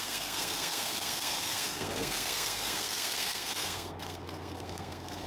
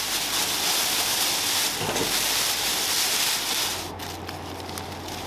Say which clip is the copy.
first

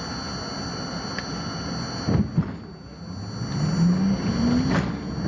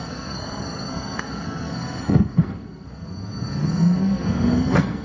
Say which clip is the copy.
second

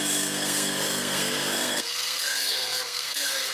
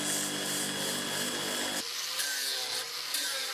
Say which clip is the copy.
first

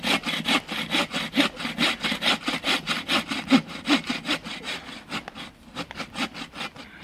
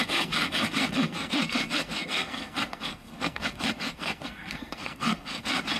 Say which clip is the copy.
second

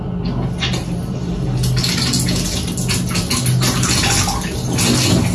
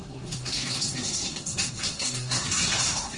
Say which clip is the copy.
second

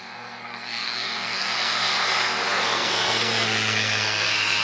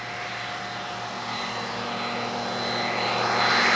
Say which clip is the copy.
first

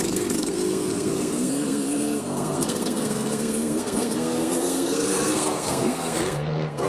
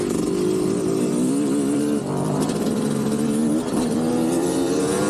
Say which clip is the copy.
first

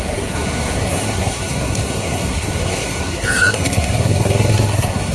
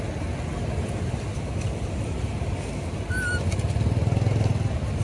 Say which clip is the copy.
first